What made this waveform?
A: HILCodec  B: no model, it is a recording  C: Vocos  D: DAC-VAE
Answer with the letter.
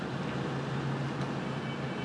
B